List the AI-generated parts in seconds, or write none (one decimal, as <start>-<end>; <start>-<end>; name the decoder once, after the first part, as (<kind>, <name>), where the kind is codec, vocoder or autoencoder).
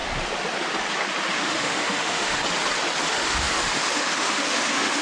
1.3-2.4 (autoencoder, DAC-VAE); 3.1-5.0